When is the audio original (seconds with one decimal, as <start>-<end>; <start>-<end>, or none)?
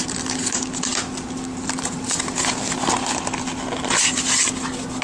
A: 0.0-5.0